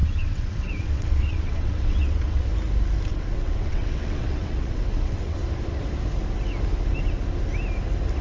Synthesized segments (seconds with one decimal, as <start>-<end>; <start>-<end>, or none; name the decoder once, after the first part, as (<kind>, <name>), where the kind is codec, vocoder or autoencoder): 0.0-2.5 (vocoder, WaveNeXt); 3.1-5.4